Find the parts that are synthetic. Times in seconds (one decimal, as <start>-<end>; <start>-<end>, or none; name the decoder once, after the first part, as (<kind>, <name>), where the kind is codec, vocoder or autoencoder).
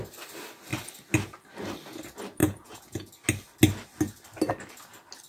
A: 2.4-3.1 (vocoder, Vocos)